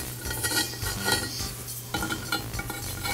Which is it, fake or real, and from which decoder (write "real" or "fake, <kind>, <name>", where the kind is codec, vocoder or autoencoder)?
real